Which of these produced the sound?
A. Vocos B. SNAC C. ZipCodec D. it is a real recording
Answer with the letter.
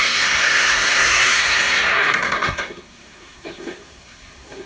B